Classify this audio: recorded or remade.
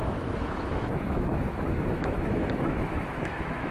remade